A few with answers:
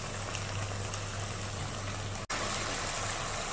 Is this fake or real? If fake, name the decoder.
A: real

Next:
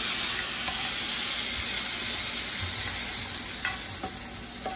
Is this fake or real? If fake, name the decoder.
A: real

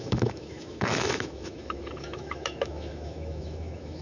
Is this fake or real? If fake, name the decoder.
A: fake, autoencoder, DAC-VAE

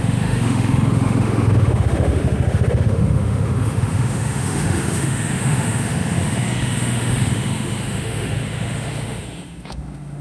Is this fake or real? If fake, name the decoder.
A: fake, autoencoder, DAC-VAE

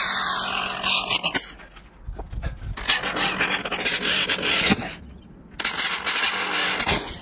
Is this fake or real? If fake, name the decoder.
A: real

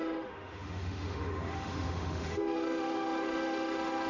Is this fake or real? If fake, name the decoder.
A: fake, autoencoder, DAC-VAE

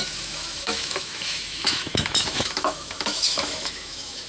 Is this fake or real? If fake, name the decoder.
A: fake, autoencoder, DAC-VAE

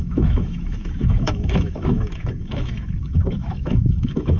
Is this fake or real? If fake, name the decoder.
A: fake, autoencoder, DAC-VAE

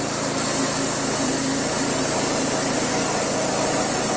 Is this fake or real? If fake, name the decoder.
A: real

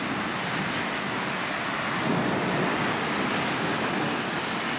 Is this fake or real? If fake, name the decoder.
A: real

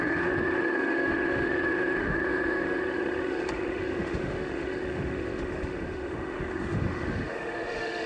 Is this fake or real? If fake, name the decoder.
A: fake, autoencoder, DAC-VAE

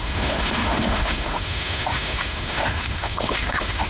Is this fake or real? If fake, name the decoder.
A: fake, autoencoder, DAC-VAE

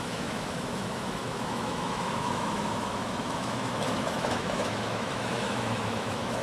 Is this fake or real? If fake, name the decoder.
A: fake, autoencoder, DAC-VAE